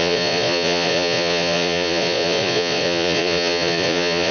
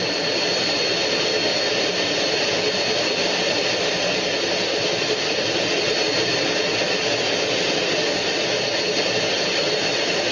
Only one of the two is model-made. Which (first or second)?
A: first